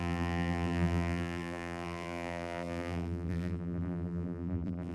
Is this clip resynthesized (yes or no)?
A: yes